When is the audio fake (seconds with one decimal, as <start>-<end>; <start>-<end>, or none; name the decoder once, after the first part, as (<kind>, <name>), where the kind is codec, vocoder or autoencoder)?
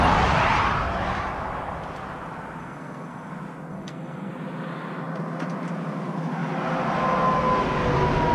2.6-3.3 (codec, SNAC); 3.7-4.3